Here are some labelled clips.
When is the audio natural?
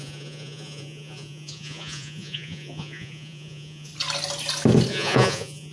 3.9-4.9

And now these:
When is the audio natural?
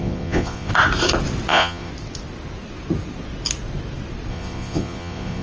0.7-1.5; 1.9-4.3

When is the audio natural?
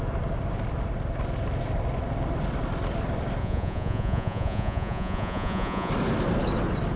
0.0-3.4; 5.9-7.0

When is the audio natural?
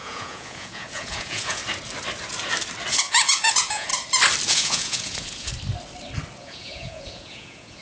1.6-2.9; 3.9-4.5; 5.5-6.4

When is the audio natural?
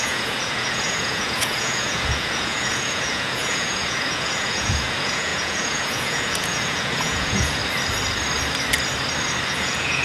7.6-9.5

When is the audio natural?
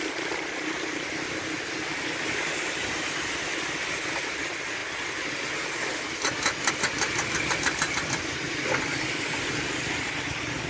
0.0-10.7